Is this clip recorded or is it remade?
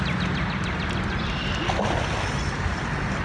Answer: recorded